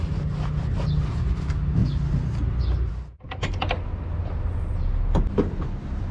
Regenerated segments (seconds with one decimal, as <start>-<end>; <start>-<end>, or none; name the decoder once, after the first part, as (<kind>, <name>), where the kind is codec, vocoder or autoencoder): none